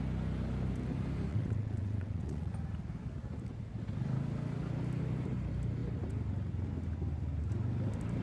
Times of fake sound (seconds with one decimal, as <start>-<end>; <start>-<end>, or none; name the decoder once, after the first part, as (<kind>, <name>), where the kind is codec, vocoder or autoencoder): 1.3-2.5 (vocoder, WaveNeXt)